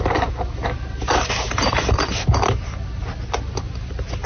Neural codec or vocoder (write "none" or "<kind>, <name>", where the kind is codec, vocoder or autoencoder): none